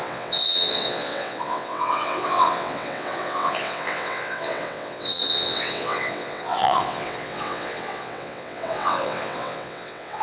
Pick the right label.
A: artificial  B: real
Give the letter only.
A